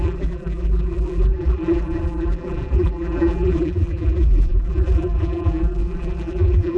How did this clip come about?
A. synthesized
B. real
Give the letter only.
A